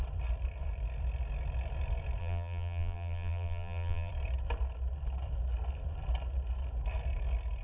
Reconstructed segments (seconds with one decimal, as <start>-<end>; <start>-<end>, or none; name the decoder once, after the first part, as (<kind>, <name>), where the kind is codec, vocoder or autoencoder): 2.2-4.1 (vocoder, BigVGAN v2)